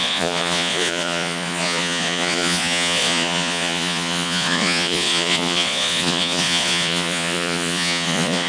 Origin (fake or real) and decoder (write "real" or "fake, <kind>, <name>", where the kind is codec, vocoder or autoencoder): fake, vocoder, Vocos